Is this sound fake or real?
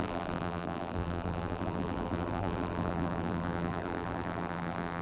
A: fake